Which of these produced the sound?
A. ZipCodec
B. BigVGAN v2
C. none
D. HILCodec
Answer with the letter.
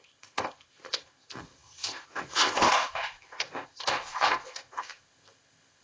A